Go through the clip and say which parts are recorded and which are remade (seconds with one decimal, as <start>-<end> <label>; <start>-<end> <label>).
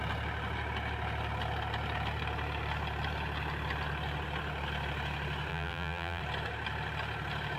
0.0-5.5 recorded; 5.5-6.2 remade; 6.2-7.6 recorded